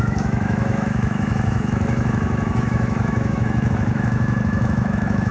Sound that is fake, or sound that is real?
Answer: fake